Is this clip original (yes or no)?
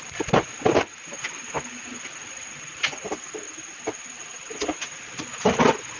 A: yes